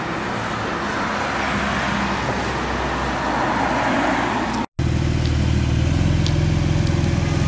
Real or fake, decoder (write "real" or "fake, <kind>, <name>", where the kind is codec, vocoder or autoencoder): real